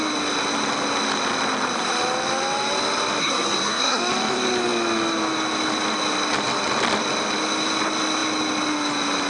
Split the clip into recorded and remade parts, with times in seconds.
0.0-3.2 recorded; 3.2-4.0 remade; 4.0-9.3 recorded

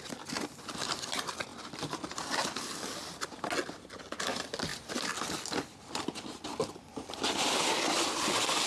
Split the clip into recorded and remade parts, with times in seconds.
0.0-8.7 recorded

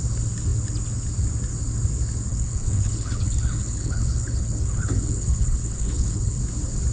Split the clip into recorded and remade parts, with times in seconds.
0.0-2.3 recorded; 2.3-6.4 remade; 6.4-6.9 recorded